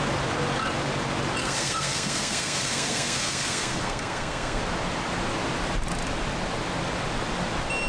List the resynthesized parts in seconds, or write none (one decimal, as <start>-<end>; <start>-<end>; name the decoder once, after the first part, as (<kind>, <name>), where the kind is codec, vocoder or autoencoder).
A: 1.4-4.6 (codec, SNAC)